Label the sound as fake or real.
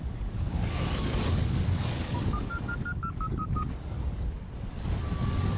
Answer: fake